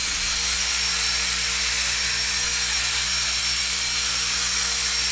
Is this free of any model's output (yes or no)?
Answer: yes